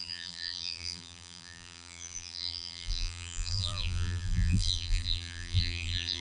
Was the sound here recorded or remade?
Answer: remade